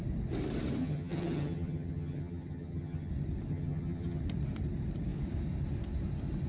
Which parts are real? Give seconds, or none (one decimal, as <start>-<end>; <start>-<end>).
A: 0.0-0.8; 3.1-3.5; 4.2-6.5